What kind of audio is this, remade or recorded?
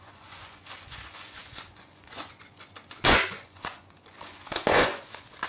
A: remade